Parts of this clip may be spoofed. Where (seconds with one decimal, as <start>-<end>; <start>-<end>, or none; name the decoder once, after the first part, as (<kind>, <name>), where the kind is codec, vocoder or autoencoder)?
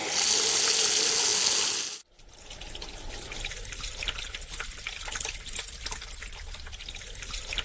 none